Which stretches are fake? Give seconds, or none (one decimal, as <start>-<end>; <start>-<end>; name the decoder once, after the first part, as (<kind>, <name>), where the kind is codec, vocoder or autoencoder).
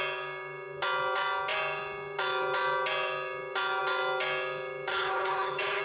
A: 4.9-5.8 (codec, HILCodec)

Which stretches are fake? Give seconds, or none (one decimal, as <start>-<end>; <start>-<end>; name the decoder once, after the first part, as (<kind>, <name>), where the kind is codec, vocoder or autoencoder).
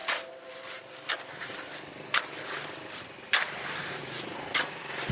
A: 3.8-4.5 (vocoder, Vocos)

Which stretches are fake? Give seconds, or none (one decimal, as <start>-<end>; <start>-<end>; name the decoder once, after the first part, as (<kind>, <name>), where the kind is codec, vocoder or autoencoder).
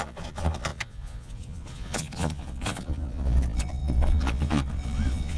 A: 0.0-5.4 (vocoder, Vocos)